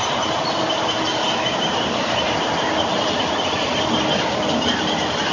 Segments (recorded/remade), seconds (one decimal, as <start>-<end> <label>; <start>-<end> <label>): 0.0-5.3 recorded